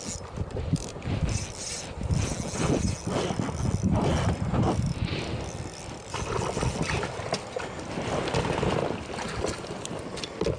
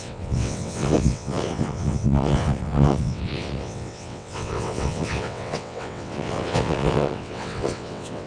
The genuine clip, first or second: first